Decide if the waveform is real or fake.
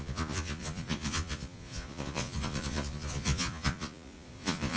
fake